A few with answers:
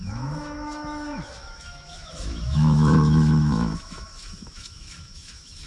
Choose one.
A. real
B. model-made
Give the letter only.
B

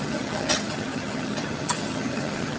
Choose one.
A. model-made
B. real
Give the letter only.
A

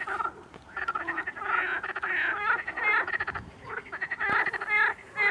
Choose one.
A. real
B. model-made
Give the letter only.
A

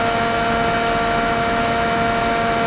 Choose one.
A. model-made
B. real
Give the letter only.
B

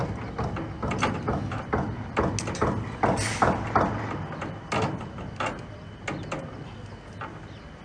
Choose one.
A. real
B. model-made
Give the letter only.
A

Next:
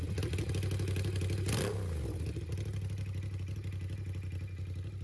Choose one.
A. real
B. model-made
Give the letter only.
A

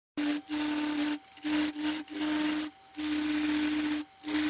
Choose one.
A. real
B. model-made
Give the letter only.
A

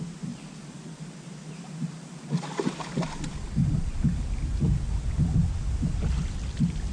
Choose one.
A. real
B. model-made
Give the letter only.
A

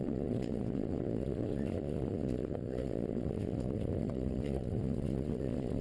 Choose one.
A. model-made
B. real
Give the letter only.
A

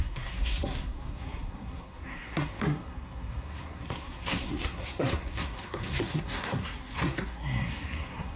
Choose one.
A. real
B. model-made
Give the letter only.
B